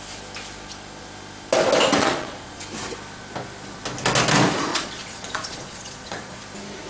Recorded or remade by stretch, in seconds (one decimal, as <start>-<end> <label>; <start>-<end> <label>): 0.0-2.0 recorded; 2.0-2.6 remade; 2.6-4.7 recorded; 4.7-6.4 remade; 6.4-6.9 recorded